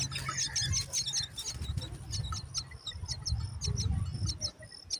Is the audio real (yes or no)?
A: yes